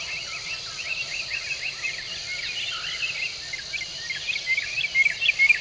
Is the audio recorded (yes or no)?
yes